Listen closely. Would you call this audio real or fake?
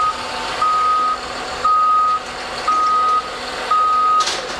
real